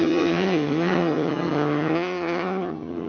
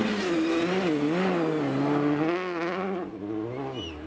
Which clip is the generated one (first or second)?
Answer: first